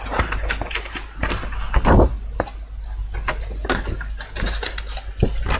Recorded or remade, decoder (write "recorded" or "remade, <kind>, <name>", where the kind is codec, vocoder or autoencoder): recorded